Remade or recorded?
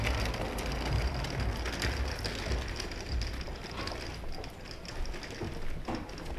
recorded